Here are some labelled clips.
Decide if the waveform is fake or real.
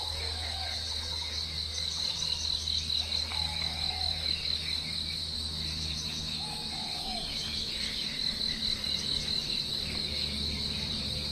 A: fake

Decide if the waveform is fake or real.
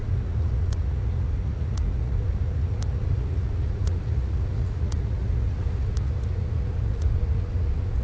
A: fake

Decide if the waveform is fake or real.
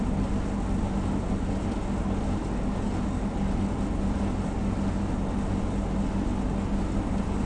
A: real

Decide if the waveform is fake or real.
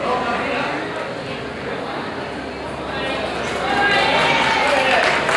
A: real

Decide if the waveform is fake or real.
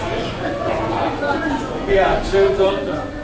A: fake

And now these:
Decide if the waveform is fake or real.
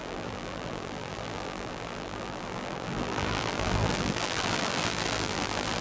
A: fake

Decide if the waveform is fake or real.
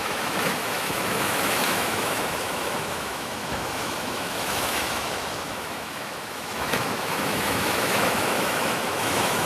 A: fake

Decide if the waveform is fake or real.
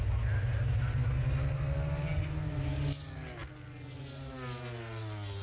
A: real